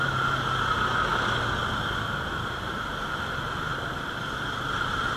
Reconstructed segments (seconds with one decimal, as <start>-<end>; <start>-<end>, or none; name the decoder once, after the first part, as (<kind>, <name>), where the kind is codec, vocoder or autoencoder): none